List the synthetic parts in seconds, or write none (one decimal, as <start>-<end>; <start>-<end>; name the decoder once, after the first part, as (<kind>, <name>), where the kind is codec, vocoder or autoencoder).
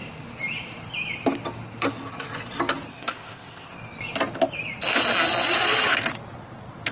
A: 2.9-3.7 (codec, ZipCodec)